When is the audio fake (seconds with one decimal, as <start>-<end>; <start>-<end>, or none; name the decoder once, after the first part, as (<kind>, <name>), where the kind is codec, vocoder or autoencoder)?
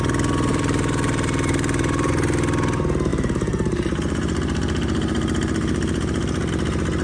0.5-2.1 (vocoder, BigVGAN v2); 3.1-6.5